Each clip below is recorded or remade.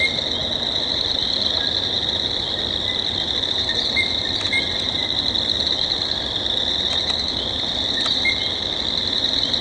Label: recorded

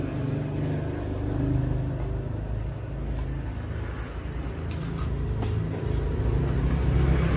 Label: recorded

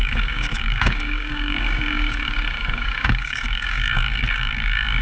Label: remade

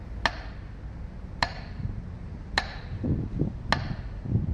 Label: recorded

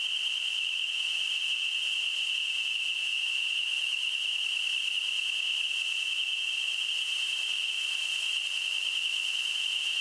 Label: recorded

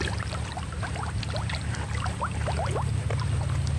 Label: recorded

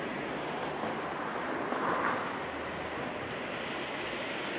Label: recorded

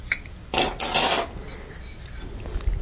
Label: recorded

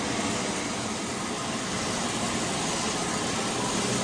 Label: recorded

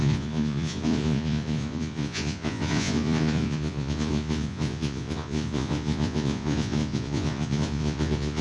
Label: remade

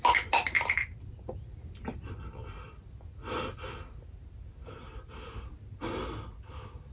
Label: recorded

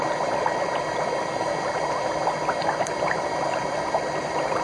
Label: recorded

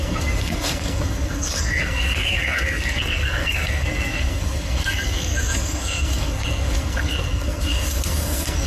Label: remade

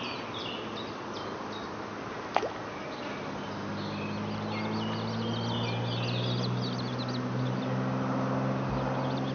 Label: recorded